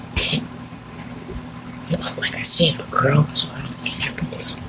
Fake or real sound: real